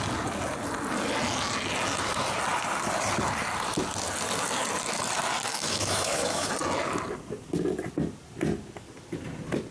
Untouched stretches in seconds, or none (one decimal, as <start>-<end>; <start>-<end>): 0.0-5.5; 6.5-9.7